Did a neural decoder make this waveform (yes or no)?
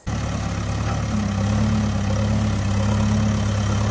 no